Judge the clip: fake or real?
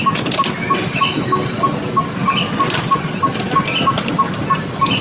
real